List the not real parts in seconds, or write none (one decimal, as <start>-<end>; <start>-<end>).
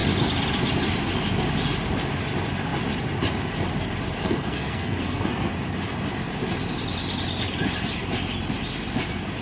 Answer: 4.2-5.5